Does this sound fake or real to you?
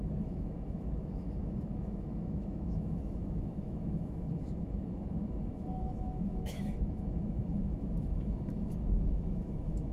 fake